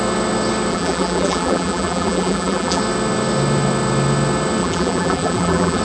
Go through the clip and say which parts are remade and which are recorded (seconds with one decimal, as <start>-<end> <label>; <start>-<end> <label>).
0.0-0.7 recorded; 0.7-2.8 remade; 2.8-4.6 recorded; 4.6-5.8 remade